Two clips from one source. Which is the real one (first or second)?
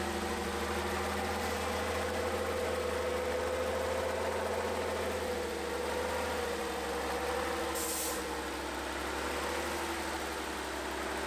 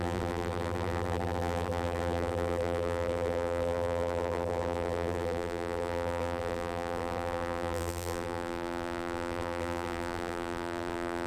first